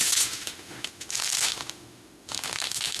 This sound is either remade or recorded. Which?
remade